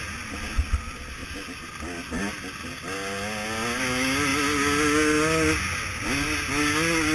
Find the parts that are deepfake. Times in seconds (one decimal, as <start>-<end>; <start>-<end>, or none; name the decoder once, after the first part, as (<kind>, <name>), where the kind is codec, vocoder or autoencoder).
none